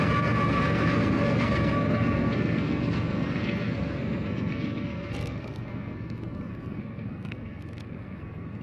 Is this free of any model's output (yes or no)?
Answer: no